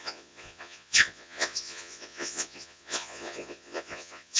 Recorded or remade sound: remade